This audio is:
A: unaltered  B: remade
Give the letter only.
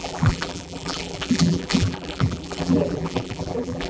B